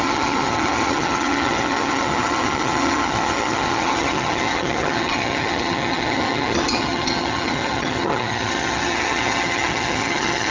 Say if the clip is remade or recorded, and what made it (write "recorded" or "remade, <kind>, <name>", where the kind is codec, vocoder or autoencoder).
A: remade, vocoder, HiFi-GAN